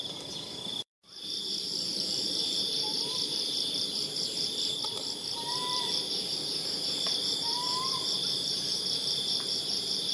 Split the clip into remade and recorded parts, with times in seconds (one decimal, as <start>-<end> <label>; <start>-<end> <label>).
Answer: 0.0-10.1 remade